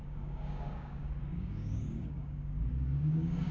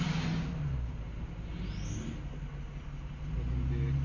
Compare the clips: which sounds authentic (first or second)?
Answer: second